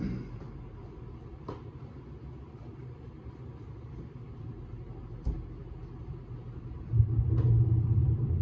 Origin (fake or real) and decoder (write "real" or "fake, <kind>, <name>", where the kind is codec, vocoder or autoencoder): real